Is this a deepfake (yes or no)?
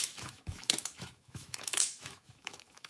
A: yes